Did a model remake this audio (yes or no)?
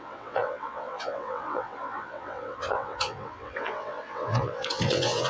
yes